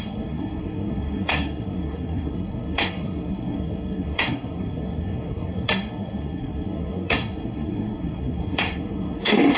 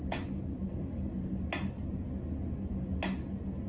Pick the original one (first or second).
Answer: second